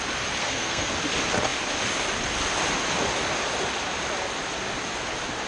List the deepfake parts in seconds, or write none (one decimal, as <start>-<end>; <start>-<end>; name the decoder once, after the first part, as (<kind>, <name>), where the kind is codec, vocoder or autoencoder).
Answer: 0.4-0.9 (codec, SNAC)